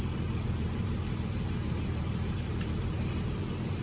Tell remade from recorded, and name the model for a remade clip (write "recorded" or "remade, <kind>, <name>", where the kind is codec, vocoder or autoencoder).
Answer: remade, vocoder, BigVGAN v2